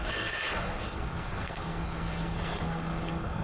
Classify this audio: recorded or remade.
remade